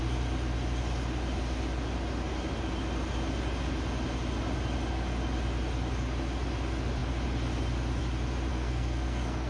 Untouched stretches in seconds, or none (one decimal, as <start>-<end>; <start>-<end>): 0.0-8.5